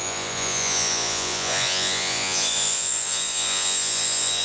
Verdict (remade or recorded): remade